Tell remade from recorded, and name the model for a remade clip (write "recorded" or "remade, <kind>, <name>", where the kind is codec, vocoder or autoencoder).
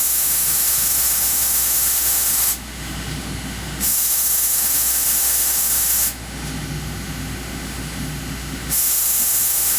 remade, autoencoder, DAC-VAE